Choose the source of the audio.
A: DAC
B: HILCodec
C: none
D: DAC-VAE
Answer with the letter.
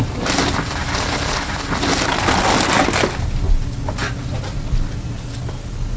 C